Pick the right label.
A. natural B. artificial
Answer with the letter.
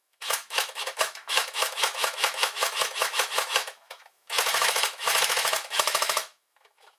B